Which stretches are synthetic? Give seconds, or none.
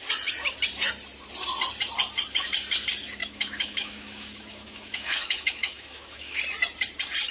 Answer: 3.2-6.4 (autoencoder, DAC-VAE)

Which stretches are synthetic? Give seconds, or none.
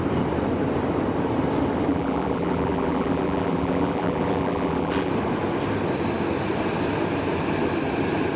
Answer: 1.9-5.1 (vocoder, BigVGAN v2)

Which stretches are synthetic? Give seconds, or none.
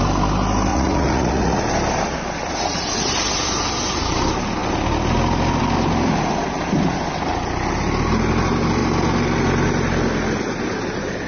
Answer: 0.7-1.6 (vocoder, Vocos)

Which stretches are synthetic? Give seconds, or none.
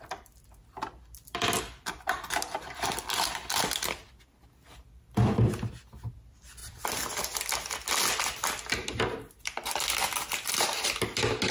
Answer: none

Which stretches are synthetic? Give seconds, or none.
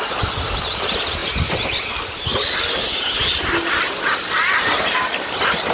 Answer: none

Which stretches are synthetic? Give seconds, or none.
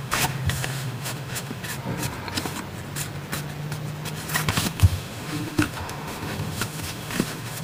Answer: 0.0-1.6 (autoencoder, DAC-VAE); 4.5-7.6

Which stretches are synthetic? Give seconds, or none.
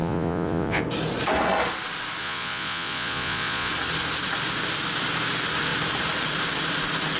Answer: 0.0-0.8 (vocoder, Vocos); 2.2-3.7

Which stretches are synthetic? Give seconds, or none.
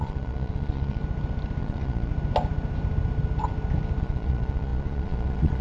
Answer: 0.0-1.0 (vocoder, Vocos); 1.6-2.1; 4.0-5.6